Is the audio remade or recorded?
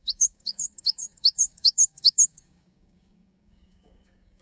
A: remade